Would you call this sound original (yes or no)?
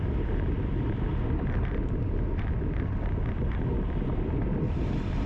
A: yes